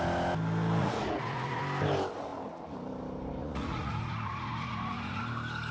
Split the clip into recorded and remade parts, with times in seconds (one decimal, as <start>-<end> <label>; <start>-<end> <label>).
0.0-0.8 recorded; 0.8-1.6 remade; 1.6-3.4 recorded; 3.4-5.2 remade; 5.2-5.7 recorded